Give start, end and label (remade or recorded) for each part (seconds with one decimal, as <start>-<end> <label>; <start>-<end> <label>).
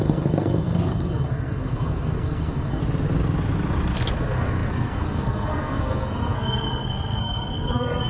0.0-2.8 remade; 2.8-4.1 recorded; 4.1-8.1 remade